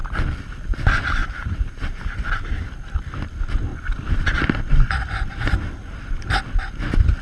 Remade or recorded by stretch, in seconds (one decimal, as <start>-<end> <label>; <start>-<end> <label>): 0.0-1.2 recorded; 1.2-2.7 remade; 2.7-7.2 recorded